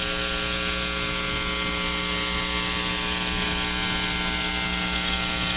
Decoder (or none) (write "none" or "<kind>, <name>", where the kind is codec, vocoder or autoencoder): none